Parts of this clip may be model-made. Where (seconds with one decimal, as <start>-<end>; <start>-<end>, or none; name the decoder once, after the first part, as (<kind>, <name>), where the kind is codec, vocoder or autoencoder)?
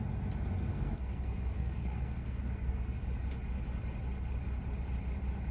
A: 0.7-3.0 (codec, SNAC)